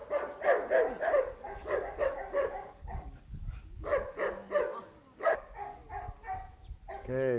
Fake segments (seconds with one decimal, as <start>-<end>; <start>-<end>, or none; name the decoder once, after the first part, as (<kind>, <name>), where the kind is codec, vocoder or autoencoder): 1.2-3.9 (codec, DAC); 4.6-5.8; 6.9-7.4